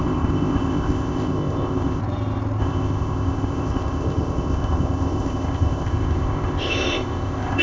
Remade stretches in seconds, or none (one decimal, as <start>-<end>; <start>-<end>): 0.0-2.0; 2.6-7.6